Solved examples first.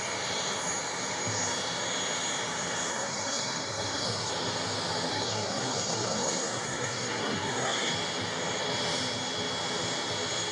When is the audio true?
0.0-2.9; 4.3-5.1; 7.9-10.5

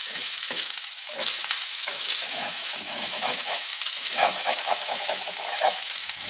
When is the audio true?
none

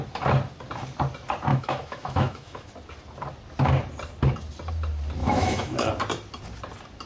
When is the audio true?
0.0-1.5; 2.7-5.2; 5.9-7.1

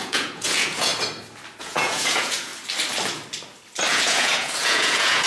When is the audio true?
0.9-1.6; 2.5-3.9

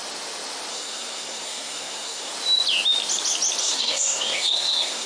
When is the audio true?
0.0-0.7; 2.3-3.6